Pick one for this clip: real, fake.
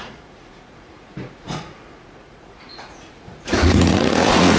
fake